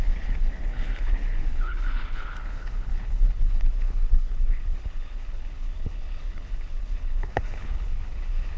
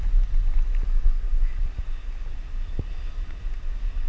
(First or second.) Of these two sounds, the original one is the second